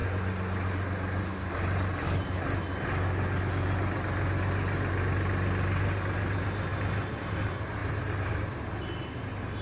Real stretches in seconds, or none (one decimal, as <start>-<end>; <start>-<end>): 0.0-9.6